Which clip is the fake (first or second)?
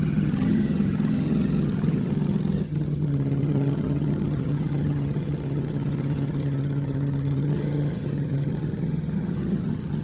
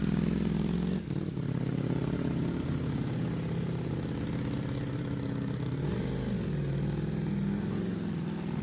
first